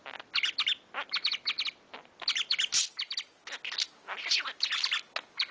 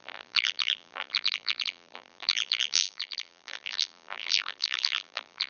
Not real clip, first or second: second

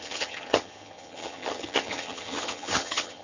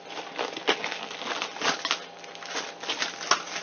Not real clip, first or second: first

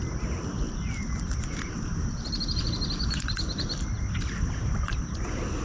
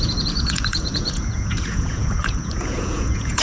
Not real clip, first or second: second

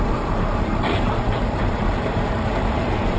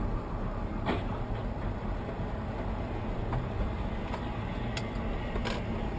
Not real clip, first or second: first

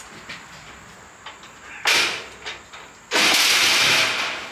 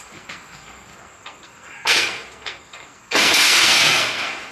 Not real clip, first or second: second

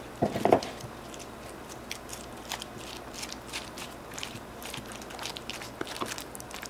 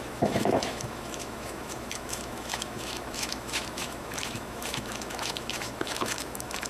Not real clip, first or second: second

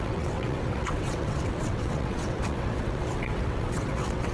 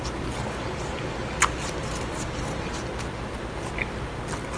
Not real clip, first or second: first